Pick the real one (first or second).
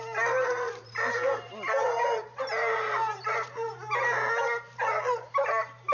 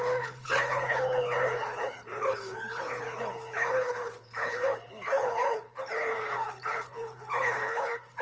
first